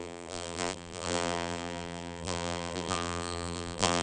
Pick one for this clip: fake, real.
fake